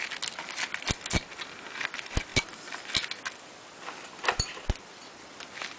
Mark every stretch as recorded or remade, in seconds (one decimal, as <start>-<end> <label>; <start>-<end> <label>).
0.0-5.8 recorded